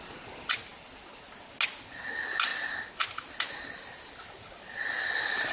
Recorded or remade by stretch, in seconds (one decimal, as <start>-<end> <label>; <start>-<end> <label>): 0.0-5.5 recorded